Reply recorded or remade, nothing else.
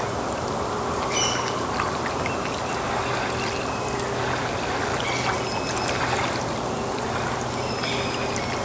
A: recorded